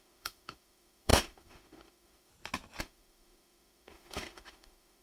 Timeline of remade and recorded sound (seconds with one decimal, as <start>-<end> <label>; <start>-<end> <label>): 0.0-2.3 remade; 2.3-2.8 recorded; 2.8-5.0 remade